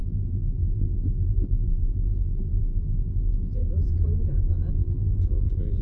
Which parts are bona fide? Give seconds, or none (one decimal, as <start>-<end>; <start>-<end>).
3.6-4.8